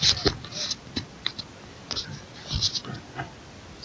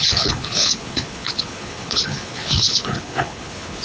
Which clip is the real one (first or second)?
first